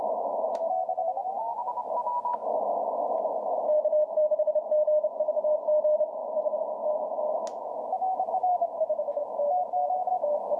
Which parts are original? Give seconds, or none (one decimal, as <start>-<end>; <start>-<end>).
0.0-10.6